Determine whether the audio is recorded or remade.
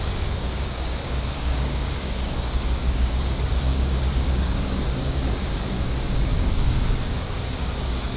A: remade